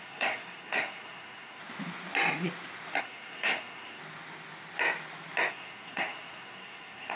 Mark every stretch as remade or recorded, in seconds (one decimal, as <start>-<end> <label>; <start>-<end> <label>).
0.0-1.6 remade; 1.6-3.0 recorded; 3.0-4.0 remade; 4.0-5.5 recorded; 5.5-7.2 remade